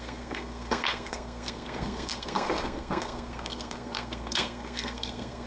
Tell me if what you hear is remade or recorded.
remade